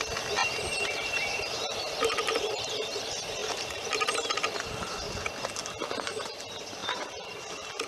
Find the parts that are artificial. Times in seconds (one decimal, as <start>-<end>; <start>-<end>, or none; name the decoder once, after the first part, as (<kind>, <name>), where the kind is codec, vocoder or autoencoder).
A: 0.4-3.0 (vocoder, BigVGAN v2); 3.4-4.3; 6.8-7.3